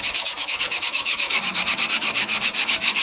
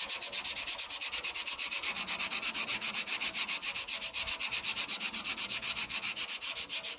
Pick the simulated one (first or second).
first